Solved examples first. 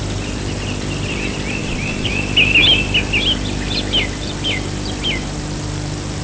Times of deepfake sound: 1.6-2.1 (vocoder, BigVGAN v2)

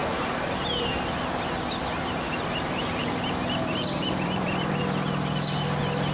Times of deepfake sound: 0.0-0.9 (vocoder, BigVGAN v2); 1.9-4.7

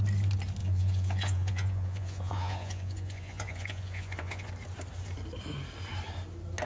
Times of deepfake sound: 0.6-4.5 (vocoder, Vocos)

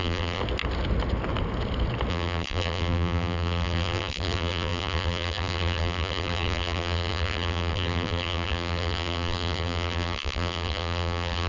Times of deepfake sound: 0.0-0.4 (vocoder, BigVGAN v2); 2.1-11.5